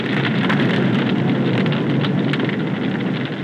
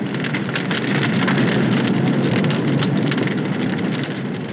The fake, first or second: second